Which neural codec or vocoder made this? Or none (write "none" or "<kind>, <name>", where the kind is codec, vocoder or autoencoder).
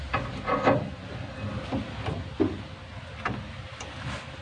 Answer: none